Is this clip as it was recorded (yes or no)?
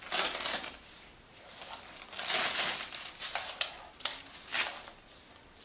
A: no